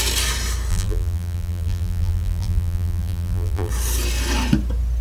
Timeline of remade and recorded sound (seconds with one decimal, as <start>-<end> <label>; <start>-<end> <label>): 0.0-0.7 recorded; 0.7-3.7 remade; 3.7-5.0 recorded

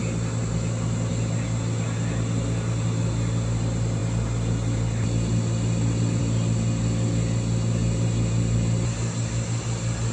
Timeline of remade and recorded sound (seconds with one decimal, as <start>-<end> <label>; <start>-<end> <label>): 0.0-10.1 recorded

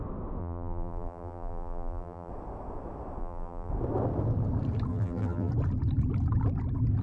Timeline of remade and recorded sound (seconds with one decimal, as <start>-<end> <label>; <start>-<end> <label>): 0.0-0.4 recorded; 0.4-2.3 remade; 2.3-3.2 recorded; 3.2-3.7 remade; 3.7-4.9 recorded; 4.9-5.5 remade; 5.5-7.0 recorded